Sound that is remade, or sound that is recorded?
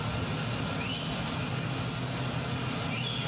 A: recorded